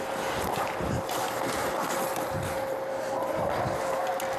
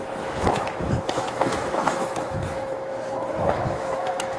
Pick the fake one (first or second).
second